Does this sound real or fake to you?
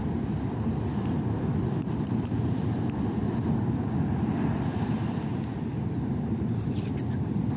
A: real